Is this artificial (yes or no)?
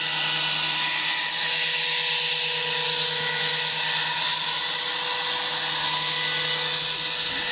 no